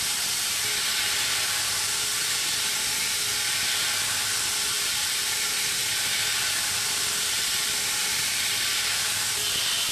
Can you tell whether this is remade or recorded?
remade